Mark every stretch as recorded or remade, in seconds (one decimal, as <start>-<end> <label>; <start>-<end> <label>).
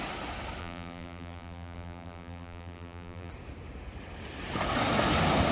0.0-0.6 recorded; 0.6-3.3 remade; 3.3-5.5 recorded